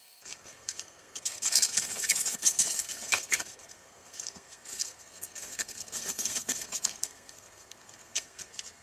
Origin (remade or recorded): remade